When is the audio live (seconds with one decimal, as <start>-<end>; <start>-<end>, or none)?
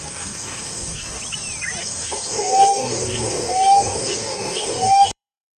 1.2-1.8